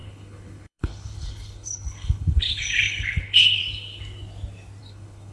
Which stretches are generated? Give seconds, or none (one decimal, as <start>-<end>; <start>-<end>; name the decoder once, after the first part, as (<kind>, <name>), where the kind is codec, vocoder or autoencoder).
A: 0.0-3.6 (codec, HILCodec); 4.8-5.3